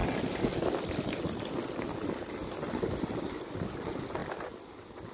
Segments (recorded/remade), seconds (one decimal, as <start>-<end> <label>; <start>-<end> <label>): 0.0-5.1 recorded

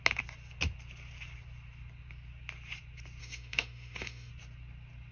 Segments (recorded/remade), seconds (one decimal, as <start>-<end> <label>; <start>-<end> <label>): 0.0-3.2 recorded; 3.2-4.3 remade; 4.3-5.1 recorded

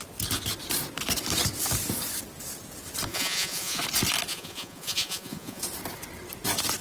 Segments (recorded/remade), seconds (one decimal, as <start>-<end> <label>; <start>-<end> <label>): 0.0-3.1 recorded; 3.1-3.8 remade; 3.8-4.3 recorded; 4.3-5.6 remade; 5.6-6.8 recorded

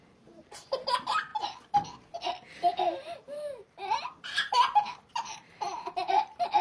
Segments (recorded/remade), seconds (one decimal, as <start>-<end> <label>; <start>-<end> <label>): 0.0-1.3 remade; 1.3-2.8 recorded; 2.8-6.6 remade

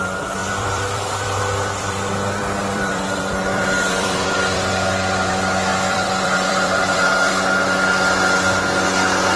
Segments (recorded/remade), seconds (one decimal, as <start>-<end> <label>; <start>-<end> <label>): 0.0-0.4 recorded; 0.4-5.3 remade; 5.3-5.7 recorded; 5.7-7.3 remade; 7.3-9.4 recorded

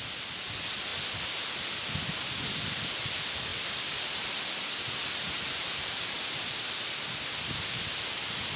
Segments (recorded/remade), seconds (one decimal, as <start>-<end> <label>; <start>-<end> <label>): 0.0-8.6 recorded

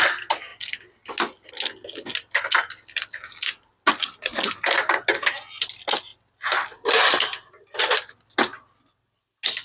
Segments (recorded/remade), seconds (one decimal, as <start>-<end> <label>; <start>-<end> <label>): 0.0-9.6 recorded